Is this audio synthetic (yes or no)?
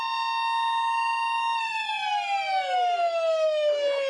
no